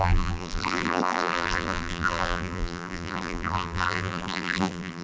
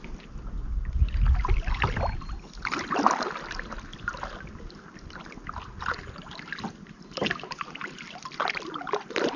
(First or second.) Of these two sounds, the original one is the second